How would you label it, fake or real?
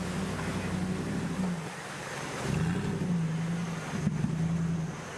real